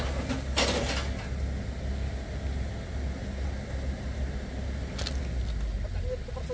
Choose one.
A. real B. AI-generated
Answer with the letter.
A